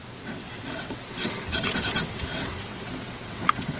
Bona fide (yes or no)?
no